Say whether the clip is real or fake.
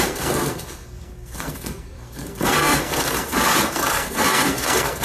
fake